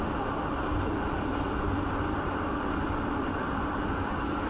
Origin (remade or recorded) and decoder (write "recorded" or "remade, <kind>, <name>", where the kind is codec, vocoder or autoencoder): recorded